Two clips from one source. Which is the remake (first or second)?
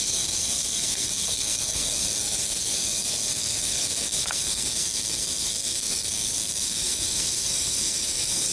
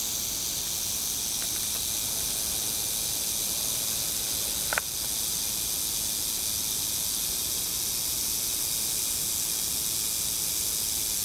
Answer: first